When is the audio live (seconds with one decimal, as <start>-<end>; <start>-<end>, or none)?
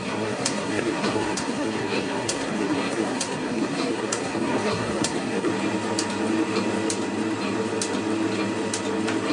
5.5-9.3